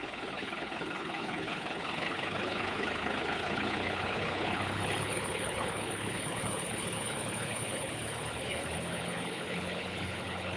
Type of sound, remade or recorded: remade